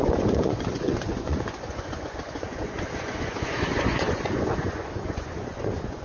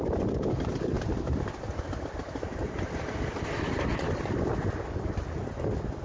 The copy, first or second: first